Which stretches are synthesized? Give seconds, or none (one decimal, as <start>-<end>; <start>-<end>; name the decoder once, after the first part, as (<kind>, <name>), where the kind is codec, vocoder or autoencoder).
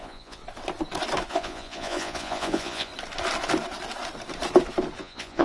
0.0-0.4 (vocoder, Vocos); 1.3-2.9; 5.0-5.4